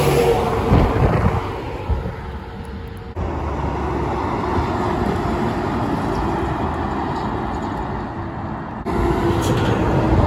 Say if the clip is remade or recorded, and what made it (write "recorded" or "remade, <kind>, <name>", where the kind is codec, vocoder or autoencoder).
recorded